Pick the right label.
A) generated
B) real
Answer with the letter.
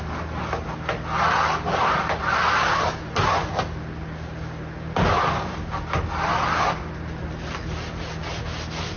B